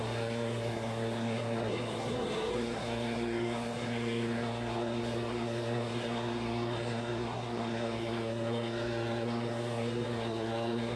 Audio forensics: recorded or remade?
remade